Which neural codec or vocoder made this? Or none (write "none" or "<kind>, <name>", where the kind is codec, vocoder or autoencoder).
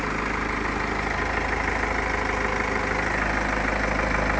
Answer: none